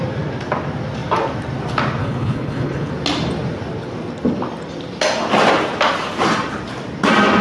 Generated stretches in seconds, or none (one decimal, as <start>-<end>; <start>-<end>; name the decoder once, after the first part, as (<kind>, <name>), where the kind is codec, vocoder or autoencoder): 2.0-2.9 (codec, HILCodec)